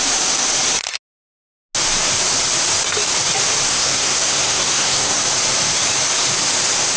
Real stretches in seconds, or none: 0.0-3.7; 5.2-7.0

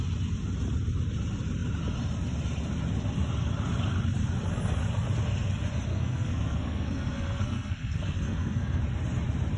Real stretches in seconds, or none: 0.0-5.9; 8.8-9.6

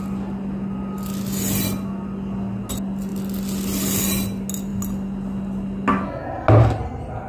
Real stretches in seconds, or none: 0.0-7.3

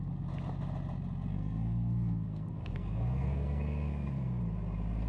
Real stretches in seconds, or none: 0.0-1.3; 4.4-5.1